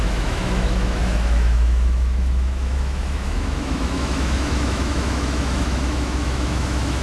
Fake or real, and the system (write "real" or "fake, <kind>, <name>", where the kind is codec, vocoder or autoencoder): fake, autoencoder, DAC-VAE